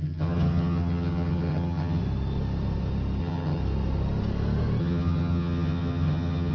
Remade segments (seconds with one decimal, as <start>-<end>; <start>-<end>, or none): 0.0-2.0; 3.2-3.6; 4.8-6.5